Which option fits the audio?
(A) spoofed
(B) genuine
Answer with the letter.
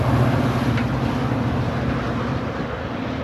B